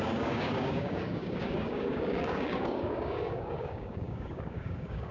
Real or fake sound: fake